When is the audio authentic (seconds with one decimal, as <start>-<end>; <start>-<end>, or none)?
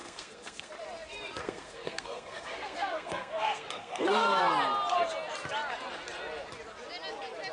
0.7-1.4; 4.4-7.5